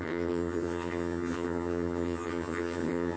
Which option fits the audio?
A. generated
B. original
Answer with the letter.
A